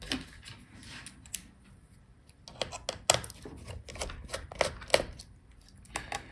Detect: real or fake real